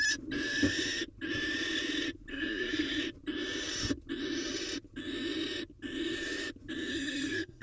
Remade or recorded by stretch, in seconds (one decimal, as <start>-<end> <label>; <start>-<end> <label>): 0.0-2.3 recorded; 2.3-3.0 remade; 3.0-6.9 recorded; 6.9-7.6 remade